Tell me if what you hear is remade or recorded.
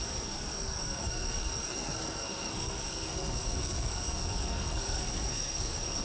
remade